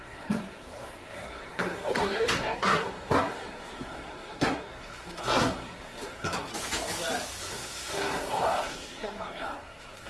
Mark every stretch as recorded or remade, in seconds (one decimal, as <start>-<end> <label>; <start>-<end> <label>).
0.0-6.5 remade; 6.5-7.4 recorded; 7.4-10.1 remade

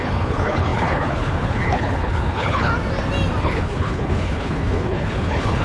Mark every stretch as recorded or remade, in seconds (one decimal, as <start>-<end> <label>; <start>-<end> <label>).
0.0-2.7 remade; 2.7-3.4 recorded; 3.4-5.6 remade

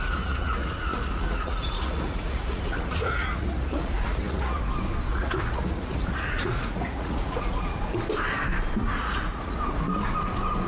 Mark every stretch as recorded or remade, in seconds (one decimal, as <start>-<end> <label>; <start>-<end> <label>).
0.0-4.6 remade; 4.6-5.1 recorded; 5.1-7.8 remade; 7.8-8.8 recorded; 8.8-9.6 remade; 9.6-10.7 recorded

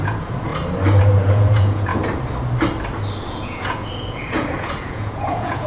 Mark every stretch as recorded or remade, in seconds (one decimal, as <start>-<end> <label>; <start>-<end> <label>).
0.0-0.5 remade; 0.5-1.0 recorded; 1.0-1.9 remade; 1.9-3.3 recorded; 3.3-5.7 remade

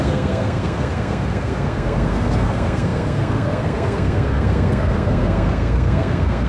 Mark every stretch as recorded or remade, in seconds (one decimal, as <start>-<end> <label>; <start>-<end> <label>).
0.0-6.5 remade

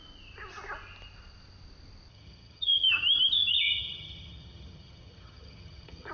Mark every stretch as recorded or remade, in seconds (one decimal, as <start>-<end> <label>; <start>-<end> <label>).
0.0-2.1 recorded; 2.1-2.9 remade; 2.9-3.5 recorded; 3.5-6.1 remade

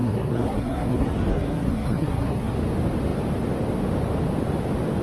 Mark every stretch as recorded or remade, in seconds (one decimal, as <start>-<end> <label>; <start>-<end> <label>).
0.0-2.5 remade; 2.5-5.0 recorded